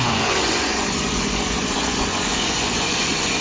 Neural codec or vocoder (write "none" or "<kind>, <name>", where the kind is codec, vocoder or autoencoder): vocoder, Vocos